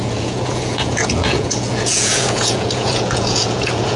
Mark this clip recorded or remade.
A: remade